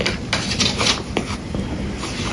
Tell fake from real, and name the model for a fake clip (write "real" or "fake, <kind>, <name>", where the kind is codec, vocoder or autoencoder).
real